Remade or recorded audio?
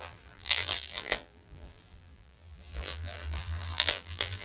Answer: remade